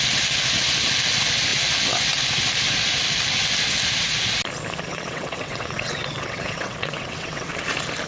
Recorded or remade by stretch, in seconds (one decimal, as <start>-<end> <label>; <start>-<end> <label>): 0.0-4.9 recorded; 4.9-7.5 remade; 7.5-8.1 recorded